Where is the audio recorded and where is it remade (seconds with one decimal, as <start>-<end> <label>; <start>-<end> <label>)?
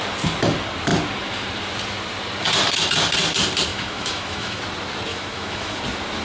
0.0-3.7 recorded; 3.7-4.6 remade; 4.6-5.1 recorded; 5.1-5.8 remade; 5.8-6.2 recorded